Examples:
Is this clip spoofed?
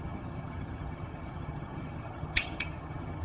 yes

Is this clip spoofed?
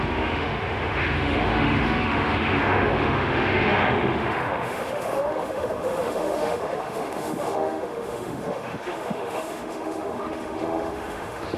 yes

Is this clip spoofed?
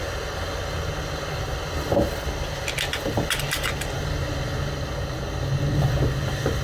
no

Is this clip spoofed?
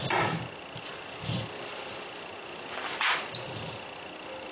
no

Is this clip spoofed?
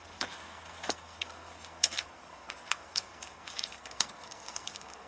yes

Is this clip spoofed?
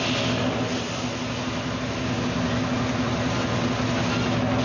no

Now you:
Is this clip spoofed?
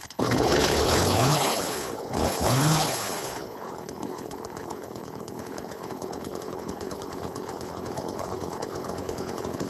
yes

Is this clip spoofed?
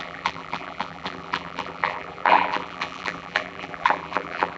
yes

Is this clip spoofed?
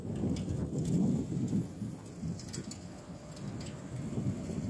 no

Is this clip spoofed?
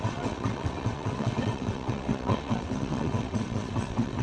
yes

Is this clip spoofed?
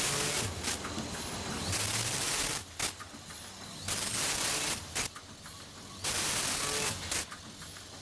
no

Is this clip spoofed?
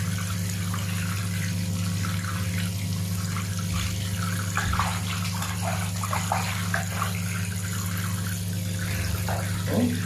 no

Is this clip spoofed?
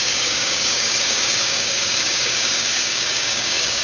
yes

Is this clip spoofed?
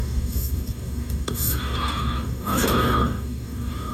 yes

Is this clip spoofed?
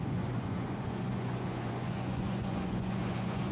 yes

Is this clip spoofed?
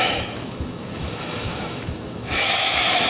yes